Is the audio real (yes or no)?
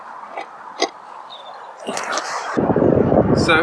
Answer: yes